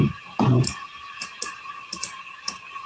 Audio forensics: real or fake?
real